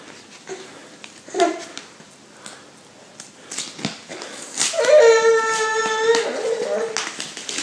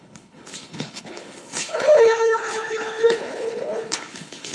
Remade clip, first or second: second